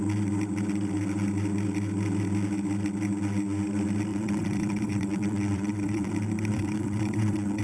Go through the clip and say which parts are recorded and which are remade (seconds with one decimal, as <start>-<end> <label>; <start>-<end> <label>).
0.0-4.1 recorded; 4.1-6.1 remade; 6.1-6.5 recorded; 6.5-7.6 remade